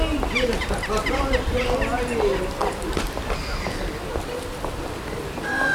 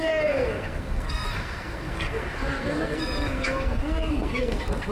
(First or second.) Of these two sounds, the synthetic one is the second